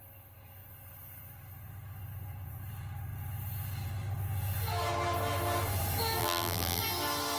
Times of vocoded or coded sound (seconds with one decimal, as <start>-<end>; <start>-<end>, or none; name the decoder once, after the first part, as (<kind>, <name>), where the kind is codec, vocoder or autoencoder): 6.2-6.8 (vocoder, BigVGAN v2)